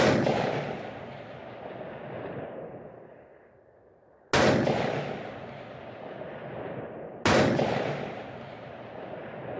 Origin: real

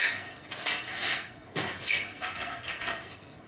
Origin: fake